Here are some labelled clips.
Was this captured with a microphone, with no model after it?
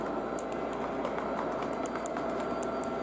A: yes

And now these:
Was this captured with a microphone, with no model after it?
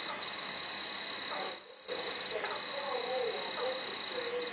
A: yes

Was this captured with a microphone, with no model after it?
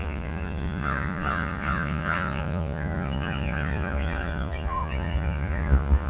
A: no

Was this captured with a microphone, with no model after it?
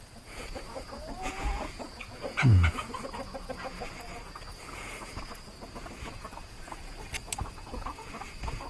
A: no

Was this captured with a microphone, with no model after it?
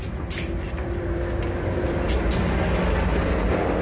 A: yes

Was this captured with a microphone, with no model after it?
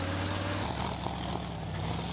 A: yes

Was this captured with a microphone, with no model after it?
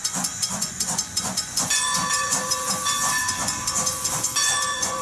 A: no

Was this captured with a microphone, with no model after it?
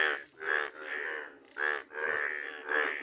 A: yes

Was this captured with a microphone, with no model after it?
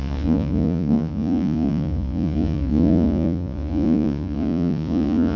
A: no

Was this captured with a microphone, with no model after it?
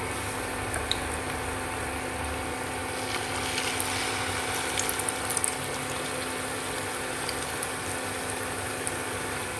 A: yes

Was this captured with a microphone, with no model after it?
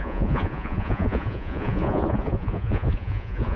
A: no